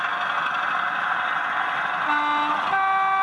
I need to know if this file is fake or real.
real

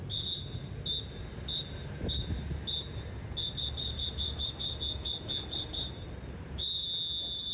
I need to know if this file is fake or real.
real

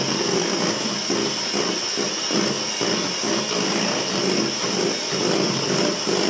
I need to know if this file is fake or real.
real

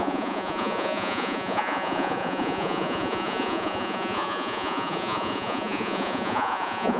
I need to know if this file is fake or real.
fake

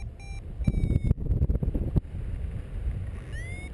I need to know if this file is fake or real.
real